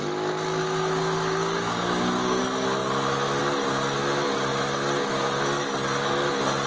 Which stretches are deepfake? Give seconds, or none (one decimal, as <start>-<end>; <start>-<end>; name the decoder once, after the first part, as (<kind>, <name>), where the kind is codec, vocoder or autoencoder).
0.6-2.4 (codec, DAC)